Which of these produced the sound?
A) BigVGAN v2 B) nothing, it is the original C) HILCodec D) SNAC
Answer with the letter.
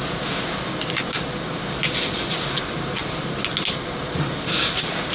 B